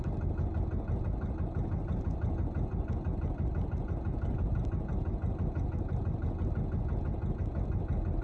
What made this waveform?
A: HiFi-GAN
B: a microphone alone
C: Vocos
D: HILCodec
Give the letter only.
B